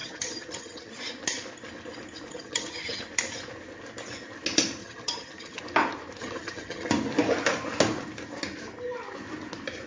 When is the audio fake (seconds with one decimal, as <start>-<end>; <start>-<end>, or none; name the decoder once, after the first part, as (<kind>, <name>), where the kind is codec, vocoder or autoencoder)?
0.0-0.9 (vocoder, HiFi-GAN); 2.3-3.0; 4.8-5.6; 6.2-6.9